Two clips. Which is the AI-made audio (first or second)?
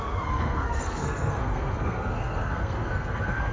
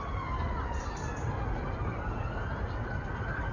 first